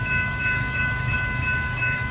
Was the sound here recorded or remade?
remade